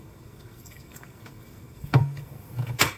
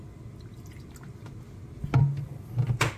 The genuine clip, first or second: second